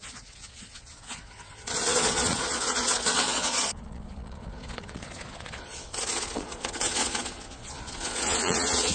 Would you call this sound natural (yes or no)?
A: no